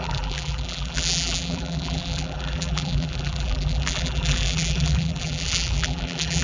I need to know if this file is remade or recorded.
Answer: remade